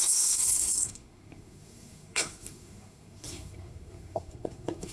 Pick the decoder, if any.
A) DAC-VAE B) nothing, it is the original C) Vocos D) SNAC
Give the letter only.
D